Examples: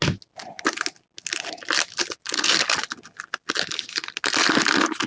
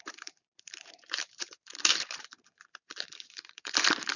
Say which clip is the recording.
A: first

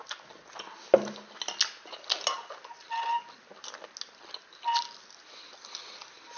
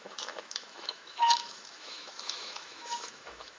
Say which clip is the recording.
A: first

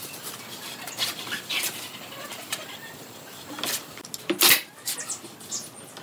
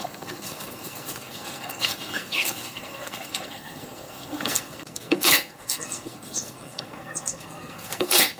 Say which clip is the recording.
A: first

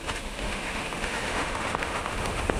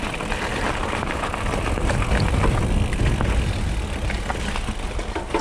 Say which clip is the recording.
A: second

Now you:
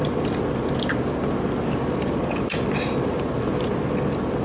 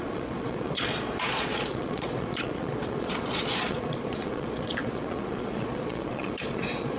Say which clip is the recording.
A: first